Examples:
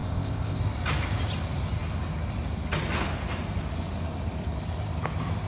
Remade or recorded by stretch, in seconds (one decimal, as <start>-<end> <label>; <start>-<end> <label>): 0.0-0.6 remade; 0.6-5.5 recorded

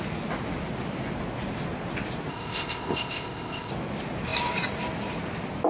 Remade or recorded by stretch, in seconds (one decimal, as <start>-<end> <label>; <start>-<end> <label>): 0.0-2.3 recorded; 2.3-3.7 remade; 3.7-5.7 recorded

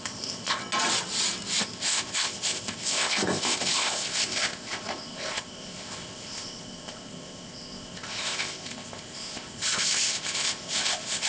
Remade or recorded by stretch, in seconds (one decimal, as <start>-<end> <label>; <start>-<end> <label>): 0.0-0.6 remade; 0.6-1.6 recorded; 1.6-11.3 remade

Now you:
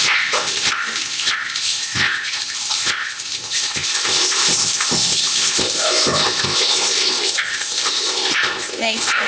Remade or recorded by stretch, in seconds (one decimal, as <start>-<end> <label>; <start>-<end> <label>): 0.0-9.3 remade

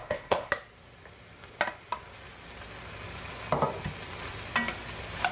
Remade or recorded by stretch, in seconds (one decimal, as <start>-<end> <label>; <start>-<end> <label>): 0.0-0.5 remade; 0.5-5.3 recorded